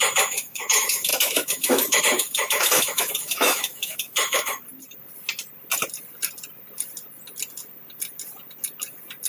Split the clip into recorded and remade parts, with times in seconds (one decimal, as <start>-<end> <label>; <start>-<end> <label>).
0.0-4.6 remade; 4.6-9.3 recorded